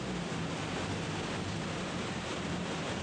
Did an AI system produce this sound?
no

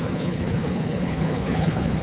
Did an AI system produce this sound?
yes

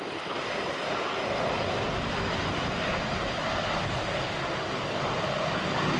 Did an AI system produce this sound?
no